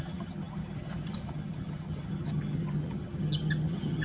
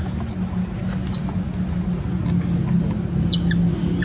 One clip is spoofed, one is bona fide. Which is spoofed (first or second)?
first